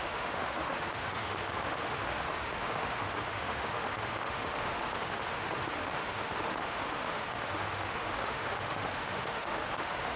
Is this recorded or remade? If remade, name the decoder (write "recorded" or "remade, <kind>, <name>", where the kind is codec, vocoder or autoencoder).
remade, autoencoder, DAC-VAE